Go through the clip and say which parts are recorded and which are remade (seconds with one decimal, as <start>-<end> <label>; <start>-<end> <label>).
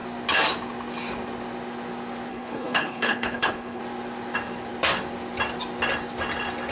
0.0-2.3 recorded; 2.3-3.8 remade; 3.8-6.7 recorded